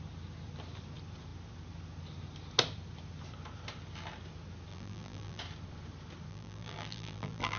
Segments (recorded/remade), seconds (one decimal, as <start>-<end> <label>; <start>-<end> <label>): 0.0-4.7 recorded; 4.7-5.4 remade; 5.4-6.3 recorded; 6.3-7.6 remade